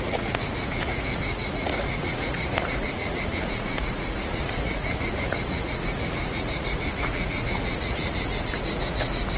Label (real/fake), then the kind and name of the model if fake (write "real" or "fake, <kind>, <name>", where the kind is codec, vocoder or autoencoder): fake, vocoder, Vocos